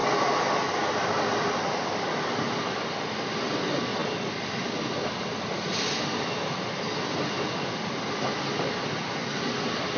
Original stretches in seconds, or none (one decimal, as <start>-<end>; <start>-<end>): 0.0-10.0